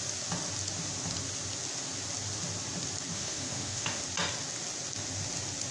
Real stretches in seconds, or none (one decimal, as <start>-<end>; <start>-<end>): 0.0-3.1; 4.0-5.7